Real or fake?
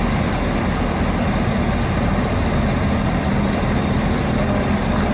real